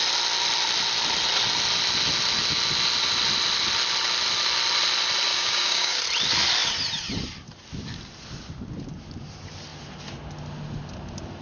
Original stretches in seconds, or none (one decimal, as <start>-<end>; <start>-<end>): 0.0-5.3; 6.0-11.4